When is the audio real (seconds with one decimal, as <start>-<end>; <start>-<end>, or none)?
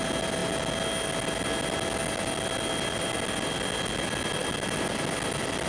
0.0-5.7